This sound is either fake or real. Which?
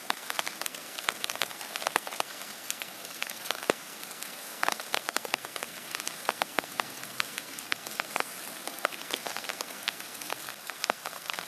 fake